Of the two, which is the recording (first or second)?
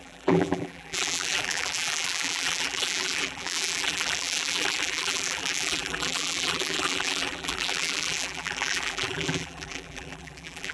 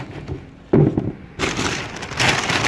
second